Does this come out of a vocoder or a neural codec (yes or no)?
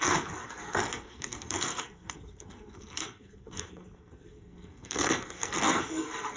yes